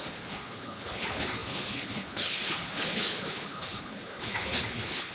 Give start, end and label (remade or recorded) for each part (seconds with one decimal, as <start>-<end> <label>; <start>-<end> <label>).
0.0-5.1 remade

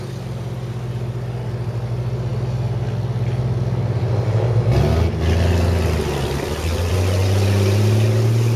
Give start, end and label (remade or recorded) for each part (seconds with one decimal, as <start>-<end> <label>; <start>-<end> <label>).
0.0-8.6 recorded

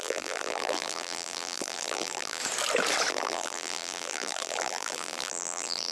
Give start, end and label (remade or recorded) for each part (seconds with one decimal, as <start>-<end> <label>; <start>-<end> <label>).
0.0-2.4 remade; 2.4-3.1 recorded; 3.1-5.9 remade